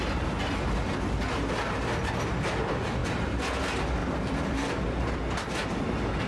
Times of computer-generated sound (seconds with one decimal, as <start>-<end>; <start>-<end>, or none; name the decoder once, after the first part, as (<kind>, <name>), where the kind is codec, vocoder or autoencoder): none